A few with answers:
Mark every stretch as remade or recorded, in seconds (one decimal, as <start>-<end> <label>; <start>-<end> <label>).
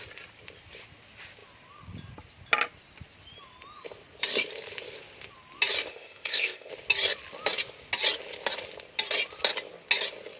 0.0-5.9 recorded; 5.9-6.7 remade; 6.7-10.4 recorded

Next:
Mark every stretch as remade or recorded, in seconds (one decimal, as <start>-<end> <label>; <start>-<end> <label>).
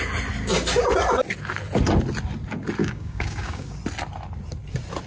0.0-2.8 recorded; 2.8-3.8 remade; 3.8-5.1 recorded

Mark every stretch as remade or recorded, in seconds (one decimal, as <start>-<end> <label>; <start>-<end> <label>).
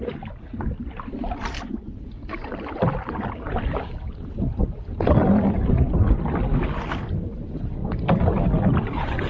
0.0-9.3 recorded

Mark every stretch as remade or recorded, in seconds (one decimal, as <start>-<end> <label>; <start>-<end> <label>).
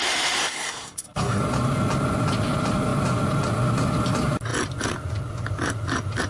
0.0-0.4 recorded; 0.4-1.4 remade; 1.4-6.3 recorded